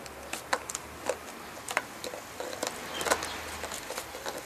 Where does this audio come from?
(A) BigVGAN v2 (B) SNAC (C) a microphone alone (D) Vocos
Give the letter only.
C